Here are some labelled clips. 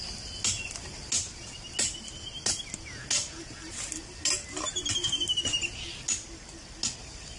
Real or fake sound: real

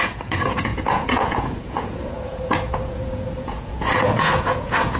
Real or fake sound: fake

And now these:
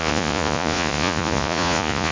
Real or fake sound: fake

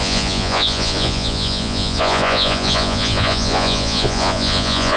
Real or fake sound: fake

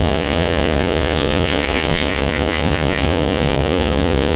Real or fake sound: fake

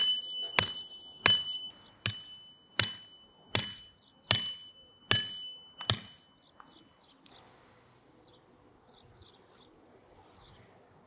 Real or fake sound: real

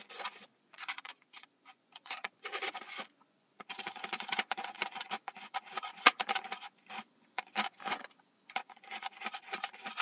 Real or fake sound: fake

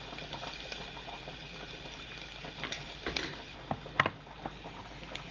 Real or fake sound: real